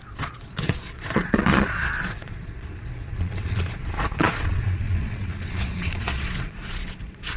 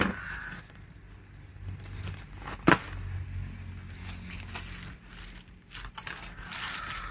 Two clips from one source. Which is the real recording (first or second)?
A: second